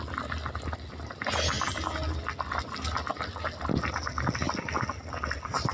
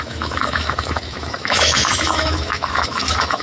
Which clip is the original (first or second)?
first